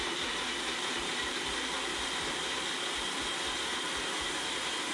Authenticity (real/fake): real